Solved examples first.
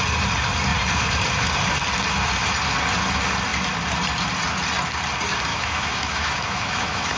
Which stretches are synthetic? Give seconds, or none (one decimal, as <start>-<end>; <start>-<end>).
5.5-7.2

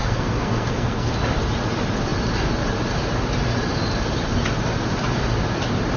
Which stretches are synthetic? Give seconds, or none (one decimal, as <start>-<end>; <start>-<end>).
0.0-1.1

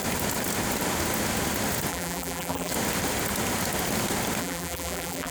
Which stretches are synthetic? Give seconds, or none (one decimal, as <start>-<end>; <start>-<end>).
1.9-2.7; 4.4-5.3

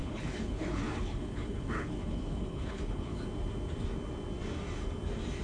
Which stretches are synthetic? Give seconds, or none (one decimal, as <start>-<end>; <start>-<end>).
0.0-3.2

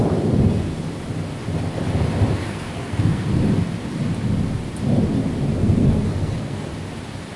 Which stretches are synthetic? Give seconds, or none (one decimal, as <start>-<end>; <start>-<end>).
2.4-3.4; 5.6-6.7

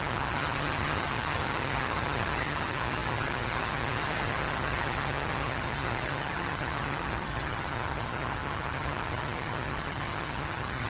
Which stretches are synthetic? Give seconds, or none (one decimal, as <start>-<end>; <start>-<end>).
0.0-10.9

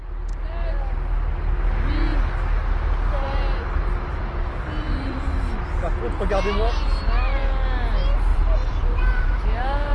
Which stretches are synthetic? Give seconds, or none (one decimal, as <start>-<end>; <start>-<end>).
4.1-5.6; 8.3-9.9

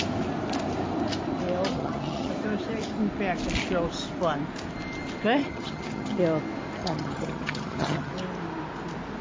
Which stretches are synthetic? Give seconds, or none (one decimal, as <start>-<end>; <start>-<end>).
1.7-2.3; 5.4-6.2; 6.8-8.1